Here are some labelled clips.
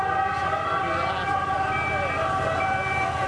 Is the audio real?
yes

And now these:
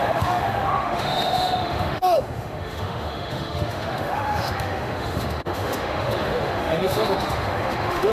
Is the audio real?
no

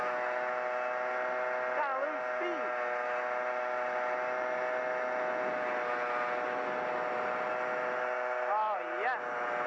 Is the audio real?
yes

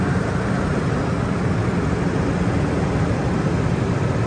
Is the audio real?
yes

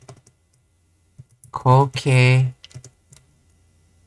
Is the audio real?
yes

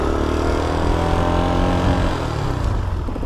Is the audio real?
yes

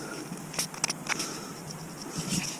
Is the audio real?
yes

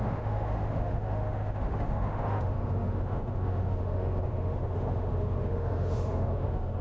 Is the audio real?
no